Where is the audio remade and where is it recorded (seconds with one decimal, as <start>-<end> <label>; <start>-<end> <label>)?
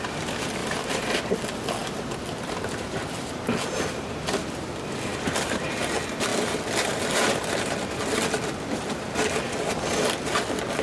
0.0-0.6 recorded; 0.6-1.1 remade; 1.1-5.1 recorded; 5.1-5.7 remade; 5.7-6.3 recorded; 6.3-9.5 remade; 9.5-10.8 recorded